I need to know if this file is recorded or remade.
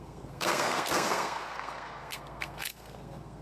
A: remade